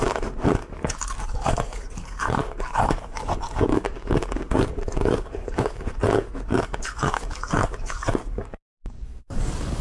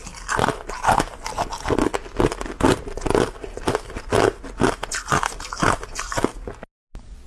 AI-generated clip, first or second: first